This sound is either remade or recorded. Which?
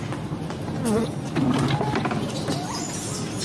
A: recorded